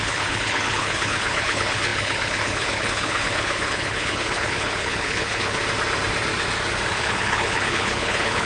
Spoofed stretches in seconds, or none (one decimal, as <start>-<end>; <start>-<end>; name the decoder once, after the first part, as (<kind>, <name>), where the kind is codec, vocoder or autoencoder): 0.0-5.6 (codec, HILCodec); 6.9-8.4